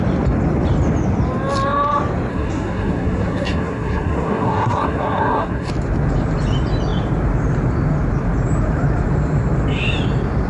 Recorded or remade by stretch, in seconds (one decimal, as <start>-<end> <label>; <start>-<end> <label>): 0.0-2.3 recorded; 2.3-5.7 remade; 5.7-10.5 recorded